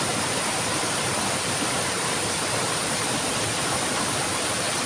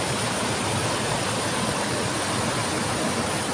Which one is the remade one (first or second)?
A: first